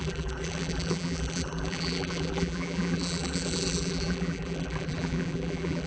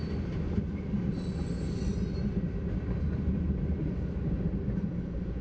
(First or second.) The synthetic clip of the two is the first